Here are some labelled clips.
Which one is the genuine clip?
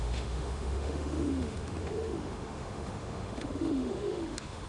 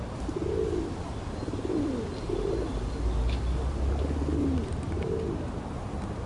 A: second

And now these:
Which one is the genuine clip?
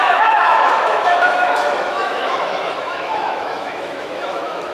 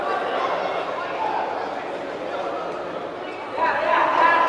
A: second